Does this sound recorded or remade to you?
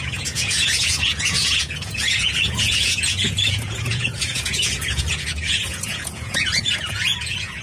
remade